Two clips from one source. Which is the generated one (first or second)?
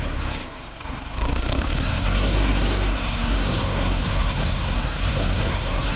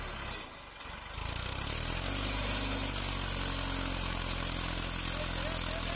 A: first